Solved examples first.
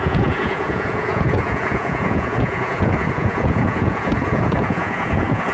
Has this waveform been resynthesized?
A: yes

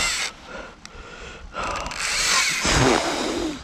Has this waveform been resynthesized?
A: no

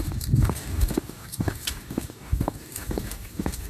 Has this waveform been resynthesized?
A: yes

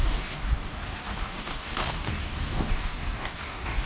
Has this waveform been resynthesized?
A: yes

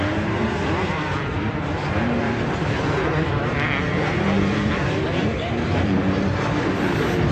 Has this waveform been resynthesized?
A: yes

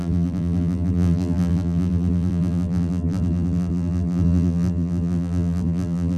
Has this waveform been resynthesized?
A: yes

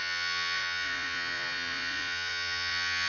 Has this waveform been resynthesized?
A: yes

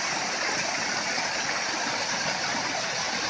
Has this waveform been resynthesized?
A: no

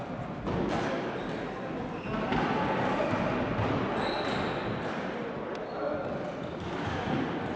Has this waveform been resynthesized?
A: no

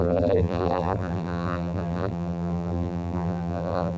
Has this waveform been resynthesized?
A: yes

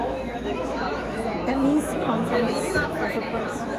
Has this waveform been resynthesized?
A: yes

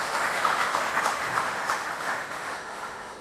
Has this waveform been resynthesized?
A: yes